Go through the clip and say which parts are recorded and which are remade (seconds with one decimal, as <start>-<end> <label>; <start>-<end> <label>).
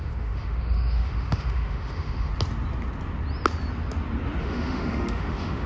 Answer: 0.0-2.3 remade; 2.3-4.4 recorded; 4.4-5.7 remade